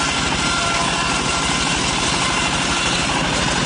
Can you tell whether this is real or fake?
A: real